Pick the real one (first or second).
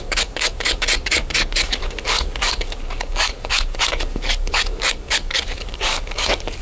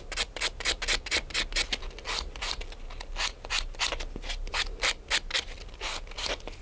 second